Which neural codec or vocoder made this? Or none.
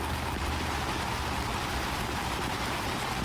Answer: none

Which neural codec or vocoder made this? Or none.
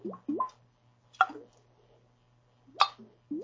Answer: none